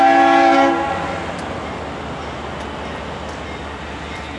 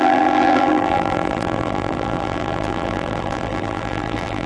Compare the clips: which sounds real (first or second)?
first